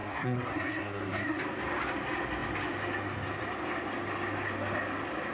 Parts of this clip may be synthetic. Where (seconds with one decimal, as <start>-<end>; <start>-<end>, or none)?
0.0-1.4